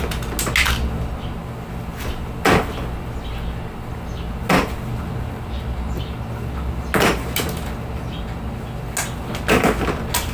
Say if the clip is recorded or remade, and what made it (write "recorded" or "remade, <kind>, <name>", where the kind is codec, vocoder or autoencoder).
recorded